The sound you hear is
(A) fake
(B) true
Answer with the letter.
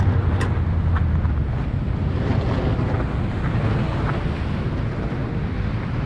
B